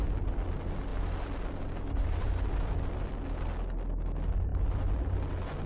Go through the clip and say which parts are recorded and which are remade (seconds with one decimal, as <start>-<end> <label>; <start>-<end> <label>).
0.0-0.9 recorded; 0.9-3.0 remade; 3.0-4.5 recorded; 4.5-5.3 remade; 5.3-5.7 recorded